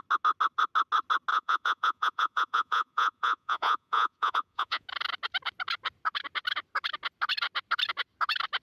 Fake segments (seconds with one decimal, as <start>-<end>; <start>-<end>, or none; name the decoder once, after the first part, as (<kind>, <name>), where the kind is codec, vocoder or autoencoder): 1.3-4.9 (vocoder, Vocos)